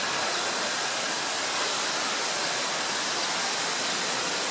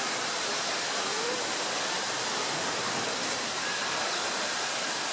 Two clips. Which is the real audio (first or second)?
first